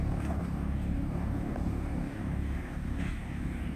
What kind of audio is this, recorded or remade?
remade